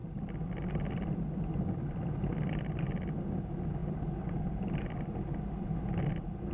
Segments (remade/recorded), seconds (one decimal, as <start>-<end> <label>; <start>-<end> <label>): 0.0-2.8 remade; 2.8-3.8 recorded; 3.8-5.0 remade; 5.0-6.5 recorded